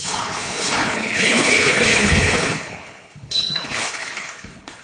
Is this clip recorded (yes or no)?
no